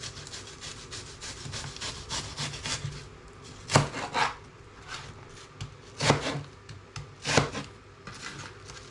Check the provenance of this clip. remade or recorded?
recorded